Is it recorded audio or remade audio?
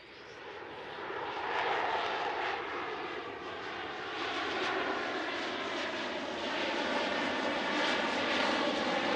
recorded